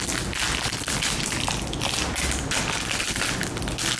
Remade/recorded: recorded